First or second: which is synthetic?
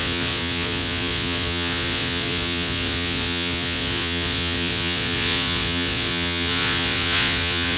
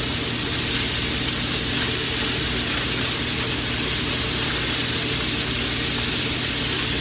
first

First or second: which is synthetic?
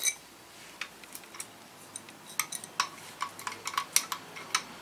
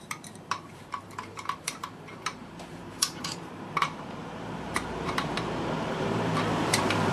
second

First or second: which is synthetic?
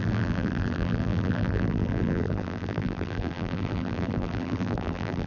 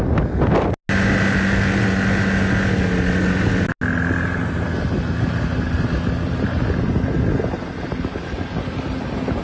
first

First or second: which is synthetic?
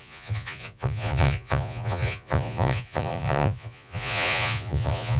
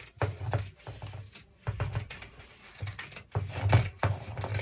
first